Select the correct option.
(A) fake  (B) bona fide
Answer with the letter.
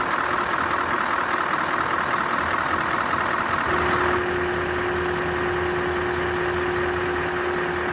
B